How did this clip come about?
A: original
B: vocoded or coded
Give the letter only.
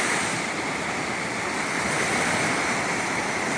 A